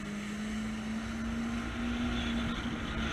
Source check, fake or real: real